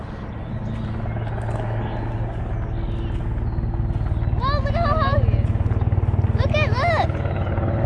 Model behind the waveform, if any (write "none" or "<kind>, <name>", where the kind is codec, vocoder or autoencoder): none